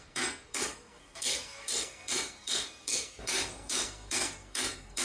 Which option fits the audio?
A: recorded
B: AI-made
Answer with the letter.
B